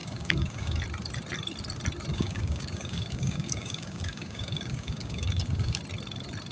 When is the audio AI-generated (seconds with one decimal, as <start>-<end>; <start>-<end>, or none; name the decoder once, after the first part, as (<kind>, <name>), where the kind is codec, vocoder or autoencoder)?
0.0-0.8 (codec, DAC); 2.1-5.8